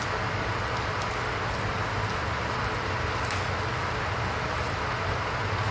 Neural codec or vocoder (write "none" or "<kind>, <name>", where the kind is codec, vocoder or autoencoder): none